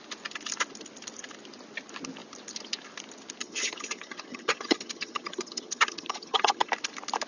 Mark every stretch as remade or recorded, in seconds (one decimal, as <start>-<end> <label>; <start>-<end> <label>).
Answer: 0.0-3.4 recorded; 3.4-6.7 remade; 6.7-7.3 recorded